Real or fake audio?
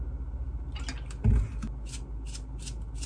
real